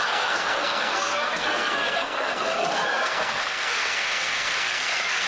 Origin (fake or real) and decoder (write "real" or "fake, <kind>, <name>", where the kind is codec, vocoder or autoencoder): fake, codec, SNAC